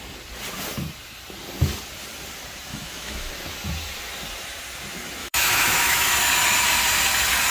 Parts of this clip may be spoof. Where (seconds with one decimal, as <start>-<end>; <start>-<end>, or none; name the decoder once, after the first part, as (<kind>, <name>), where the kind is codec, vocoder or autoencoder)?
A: 2.7-3.3 (autoencoder, DAC-VAE); 5.2-6.1

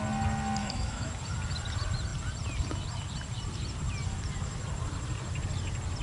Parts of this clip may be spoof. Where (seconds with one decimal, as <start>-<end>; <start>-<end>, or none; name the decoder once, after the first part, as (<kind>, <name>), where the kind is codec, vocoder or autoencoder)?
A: 0.6-1.1 (autoencoder, DAC-VAE)

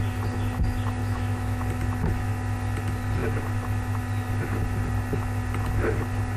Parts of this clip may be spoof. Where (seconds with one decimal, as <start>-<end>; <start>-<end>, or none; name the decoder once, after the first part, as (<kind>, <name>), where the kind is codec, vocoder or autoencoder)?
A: 1.0-1.6 (autoencoder, DAC-VAE)